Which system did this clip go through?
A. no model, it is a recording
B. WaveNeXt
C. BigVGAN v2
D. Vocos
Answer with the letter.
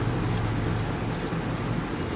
A